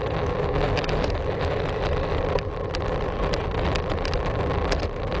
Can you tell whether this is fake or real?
real